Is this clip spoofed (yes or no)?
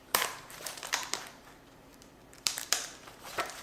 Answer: yes